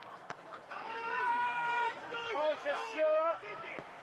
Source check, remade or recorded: remade